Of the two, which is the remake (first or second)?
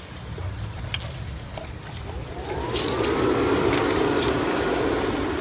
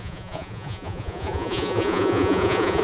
second